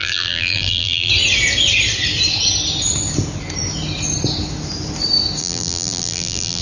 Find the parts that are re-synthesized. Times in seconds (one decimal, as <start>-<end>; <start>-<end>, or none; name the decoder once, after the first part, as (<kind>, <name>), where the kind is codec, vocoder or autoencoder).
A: 0.0-1.1 (vocoder, BigVGAN v2); 5.4-6.6

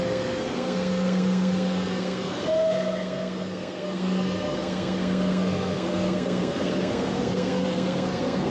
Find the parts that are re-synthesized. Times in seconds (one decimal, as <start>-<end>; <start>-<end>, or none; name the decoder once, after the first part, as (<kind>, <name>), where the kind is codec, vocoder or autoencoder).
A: 0.0-8.5 (codec, SNAC)

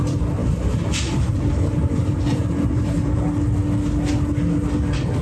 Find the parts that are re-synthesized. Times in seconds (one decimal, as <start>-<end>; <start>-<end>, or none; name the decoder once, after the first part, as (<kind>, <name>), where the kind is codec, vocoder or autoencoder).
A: 0.4-3.2 (vocoder, BigVGAN v2)

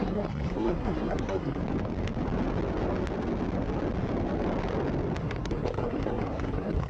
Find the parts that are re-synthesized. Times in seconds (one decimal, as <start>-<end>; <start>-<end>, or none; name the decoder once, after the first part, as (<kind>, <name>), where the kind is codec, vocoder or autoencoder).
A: 0.0-1.6 (codec, SNAC); 5.2-6.9